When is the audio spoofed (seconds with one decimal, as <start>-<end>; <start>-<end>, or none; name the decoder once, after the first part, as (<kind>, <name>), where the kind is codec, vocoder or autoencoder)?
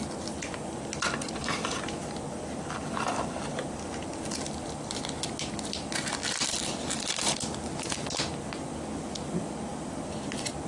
none